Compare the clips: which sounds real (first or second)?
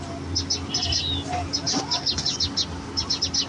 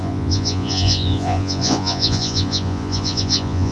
first